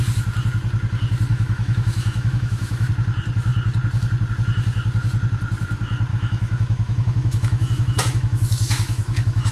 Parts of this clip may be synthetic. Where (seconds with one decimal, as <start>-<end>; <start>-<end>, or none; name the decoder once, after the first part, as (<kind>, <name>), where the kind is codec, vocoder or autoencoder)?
1.3-2.9 (autoencoder, DAC-VAE); 6.1-9.5